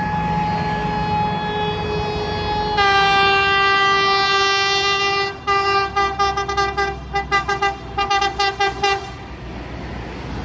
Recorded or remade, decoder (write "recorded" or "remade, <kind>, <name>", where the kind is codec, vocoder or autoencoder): recorded